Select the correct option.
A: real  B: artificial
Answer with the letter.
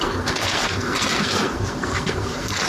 B